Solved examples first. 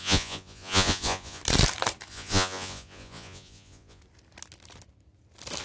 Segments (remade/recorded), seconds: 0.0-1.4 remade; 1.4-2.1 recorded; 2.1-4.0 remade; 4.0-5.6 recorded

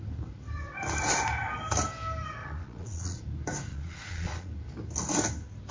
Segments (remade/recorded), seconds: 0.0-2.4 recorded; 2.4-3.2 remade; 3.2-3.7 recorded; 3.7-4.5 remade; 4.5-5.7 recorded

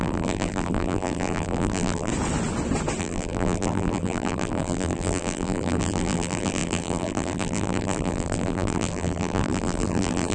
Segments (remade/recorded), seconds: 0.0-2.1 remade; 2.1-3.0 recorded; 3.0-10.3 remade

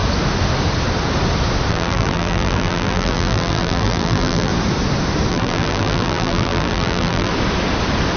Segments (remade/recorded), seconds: 0.0-1.7 recorded; 1.7-4.5 remade; 4.5-5.3 recorded; 5.3-7.3 remade; 7.3-8.2 recorded

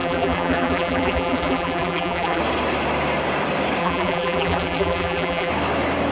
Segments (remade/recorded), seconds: 0.0-2.4 remade; 2.4-3.8 recorded; 3.8-5.5 remade; 5.5-6.1 recorded

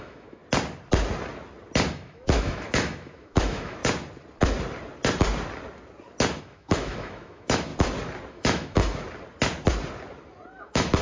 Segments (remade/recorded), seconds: 0.0-0.4 remade; 0.4-1.9 recorded; 1.9-3.8 remade; 3.8-6.4 recorded; 6.4-7.7 remade; 7.7-8.3 recorded; 8.3-8.8 remade; 8.8-10.6 recorded; 10.6-11.0 remade

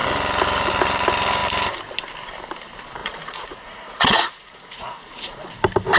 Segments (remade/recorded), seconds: 0.0-3.0 recorded; 3.0-5.3 remade; 5.3-6.0 recorded

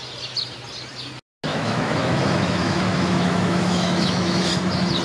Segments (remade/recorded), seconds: 0.0-1.5 recorded; 1.5-4.5 remade; 4.5-5.0 recorded